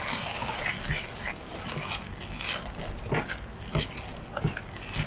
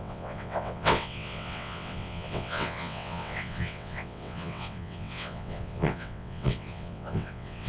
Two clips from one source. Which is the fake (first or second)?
second